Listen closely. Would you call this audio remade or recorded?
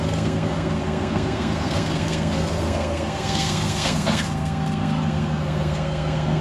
remade